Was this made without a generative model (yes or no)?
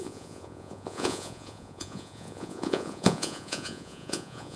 no